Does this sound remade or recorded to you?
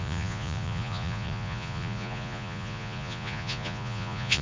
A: remade